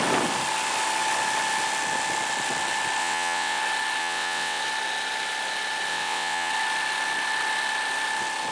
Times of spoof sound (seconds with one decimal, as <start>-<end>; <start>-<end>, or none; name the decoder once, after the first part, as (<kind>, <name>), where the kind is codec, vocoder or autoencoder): 3.0-3.6 (vocoder, WaveNeXt); 4.0-4.6; 5.9-6.5